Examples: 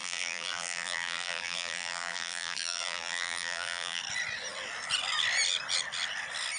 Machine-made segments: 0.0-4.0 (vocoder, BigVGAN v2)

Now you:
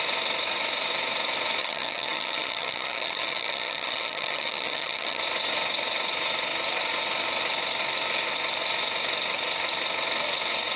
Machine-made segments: 1.6-5.2 (vocoder, HiFi-GAN)

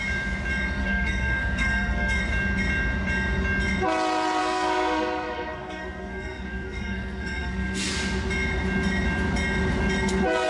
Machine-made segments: 0.8-2.2 (codec, SNAC); 4.4-7.9